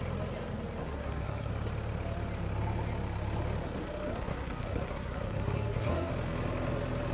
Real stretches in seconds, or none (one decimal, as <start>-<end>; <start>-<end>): 0.0-0.8; 1.5-4.1; 6.1-7.1